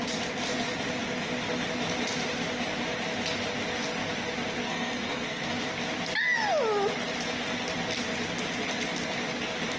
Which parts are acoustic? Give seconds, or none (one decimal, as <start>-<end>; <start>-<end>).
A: 0.0-4.6; 5.5-9.8